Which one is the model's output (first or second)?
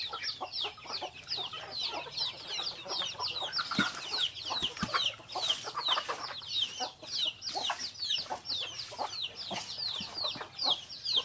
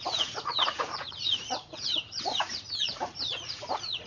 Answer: second